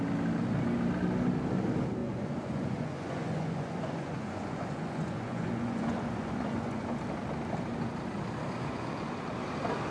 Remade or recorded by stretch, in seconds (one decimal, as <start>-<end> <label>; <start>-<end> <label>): 0.0-2.0 recorded; 2.0-7.0 remade; 7.0-8.6 recorded; 8.6-9.1 remade; 9.1-9.9 recorded